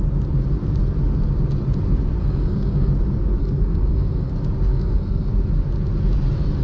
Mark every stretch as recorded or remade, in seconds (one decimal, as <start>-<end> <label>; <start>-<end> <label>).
0.0-2.2 recorded; 2.2-2.9 remade; 2.9-3.4 recorded; 3.4-4.3 remade; 4.3-4.7 recorded; 4.7-5.3 remade; 5.3-6.6 recorded